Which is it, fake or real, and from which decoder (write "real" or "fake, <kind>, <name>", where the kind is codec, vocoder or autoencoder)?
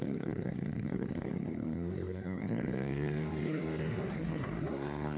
fake, codec, SNAC